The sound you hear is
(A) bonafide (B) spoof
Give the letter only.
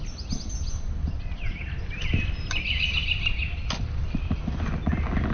A